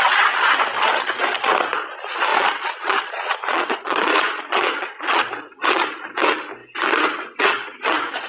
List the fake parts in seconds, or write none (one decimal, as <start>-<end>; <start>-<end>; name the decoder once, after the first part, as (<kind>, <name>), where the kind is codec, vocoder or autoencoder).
2.3-5.3 (vocoder, Vocos)